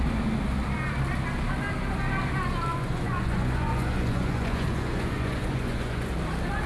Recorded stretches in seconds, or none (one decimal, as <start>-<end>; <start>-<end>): 0.0-2.7; 6.1-6.7